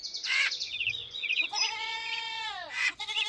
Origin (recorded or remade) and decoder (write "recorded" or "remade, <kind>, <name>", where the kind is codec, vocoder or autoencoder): remade, vocoder, Vocos